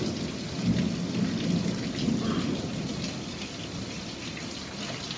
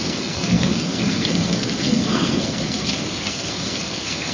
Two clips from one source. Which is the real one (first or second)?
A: first